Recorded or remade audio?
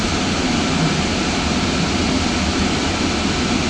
recorded